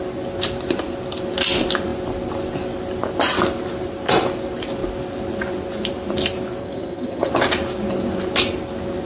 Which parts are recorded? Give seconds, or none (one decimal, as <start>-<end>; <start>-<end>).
0.0-6.6; 7.3-9.1